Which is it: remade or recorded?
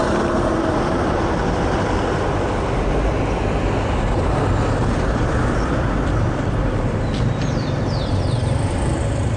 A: remade